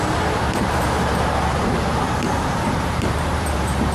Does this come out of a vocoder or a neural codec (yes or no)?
yes